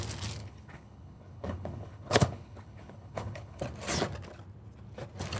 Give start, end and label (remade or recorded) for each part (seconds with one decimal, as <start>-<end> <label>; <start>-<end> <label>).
0.0-0.4 recorded; 0.4-3.6 remade; 3.6-5.4 recorded